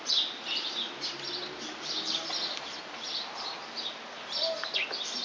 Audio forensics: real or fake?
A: real